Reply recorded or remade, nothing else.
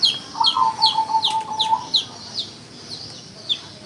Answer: recorded